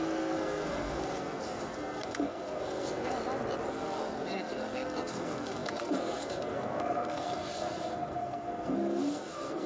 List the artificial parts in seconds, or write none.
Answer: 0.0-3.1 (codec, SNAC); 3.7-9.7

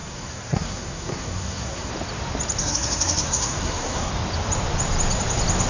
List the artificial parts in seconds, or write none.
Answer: 0.0-1.9 (codec, SNAC); 2.6-4.1

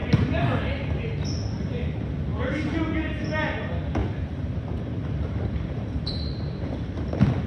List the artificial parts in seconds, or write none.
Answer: 2.3-2.8 (vocoder, BigVGAN v2); 4.0-7.1

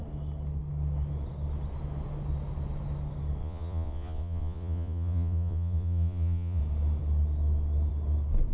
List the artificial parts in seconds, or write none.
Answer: 3.4-6.6 (vocoder, Vocos)

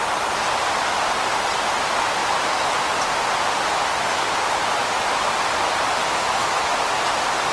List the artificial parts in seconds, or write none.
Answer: 4.8-5.3 (autoencoder, DAC-VAE); 6.0-6.8